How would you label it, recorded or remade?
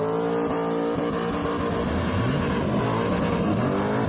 recorded